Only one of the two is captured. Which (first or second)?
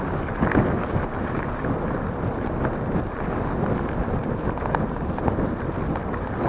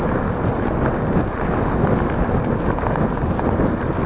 second